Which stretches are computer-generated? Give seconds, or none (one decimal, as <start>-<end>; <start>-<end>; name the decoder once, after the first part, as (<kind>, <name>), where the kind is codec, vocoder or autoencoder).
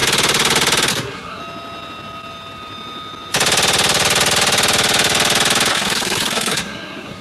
0.9-1.4 (codec, SNAC); 5.7-7.2